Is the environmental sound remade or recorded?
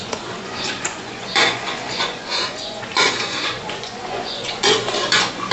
remade